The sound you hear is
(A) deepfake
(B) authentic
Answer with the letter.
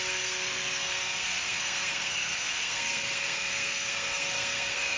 A